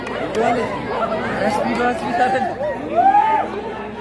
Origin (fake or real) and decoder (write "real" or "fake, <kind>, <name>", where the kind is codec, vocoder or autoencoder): real